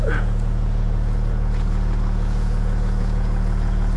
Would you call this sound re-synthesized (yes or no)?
yes